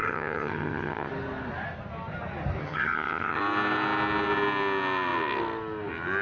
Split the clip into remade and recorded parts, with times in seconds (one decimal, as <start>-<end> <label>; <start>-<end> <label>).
0.0-1.1 remade; 1.1-2.6 recorded; 2.6-3.4 remade; 3.4-6.2 recorded